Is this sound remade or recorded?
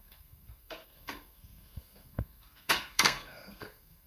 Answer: remade